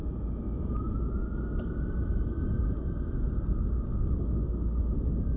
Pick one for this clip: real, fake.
real